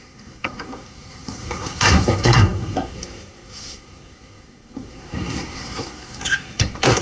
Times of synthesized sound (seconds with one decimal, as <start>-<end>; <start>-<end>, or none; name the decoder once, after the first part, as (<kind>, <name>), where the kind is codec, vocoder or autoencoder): 0.0-7.0 (codec, SNAC)